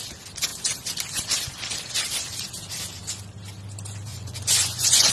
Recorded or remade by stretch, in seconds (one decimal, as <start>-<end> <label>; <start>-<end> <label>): 0.0-4.1 recorded; 4.1-5.1 remade

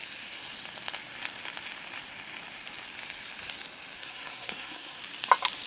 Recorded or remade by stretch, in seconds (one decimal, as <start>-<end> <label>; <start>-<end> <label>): 0.0-4.0 recorded; 4.0-5.0 remade; 5.0-5.7 recorded

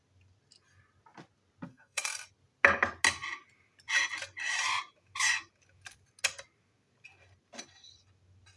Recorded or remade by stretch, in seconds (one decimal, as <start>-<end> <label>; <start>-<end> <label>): 0.0-1.7 recorded; 1.7-2.3 remade; 2.3-8.6 recorded

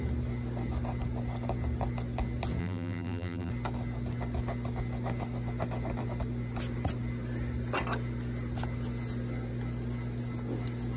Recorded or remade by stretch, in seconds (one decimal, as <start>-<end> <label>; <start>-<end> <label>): 0.0-2.6 recorded; 2.6-3.5 remade; 3.5-11.0 recorded

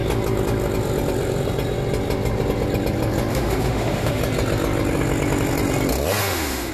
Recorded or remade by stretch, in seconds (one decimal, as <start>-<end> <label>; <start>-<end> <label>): 0.0-3.3 recorded; 3.3-4.2 remade; 4.2-6.2 recorded; 6.2-6.7 remade

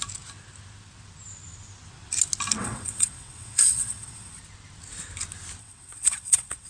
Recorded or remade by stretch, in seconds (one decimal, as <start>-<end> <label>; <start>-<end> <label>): 0.0-2.6 recorded; 2.6-4.4 remade; 4.4-5.6 recorded; 5.6-6.7 remade

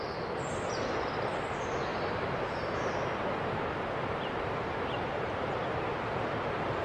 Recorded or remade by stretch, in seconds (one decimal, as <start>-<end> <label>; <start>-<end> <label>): 0.0-1.9 recorded; 1.9-2.8 remade; 2.8-6.8 recorded

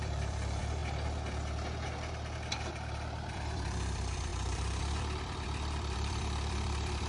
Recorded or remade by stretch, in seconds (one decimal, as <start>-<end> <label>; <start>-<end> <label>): 0.0-0.8 remade; 0.8-2.7 recorded; 2.7-7.1 remade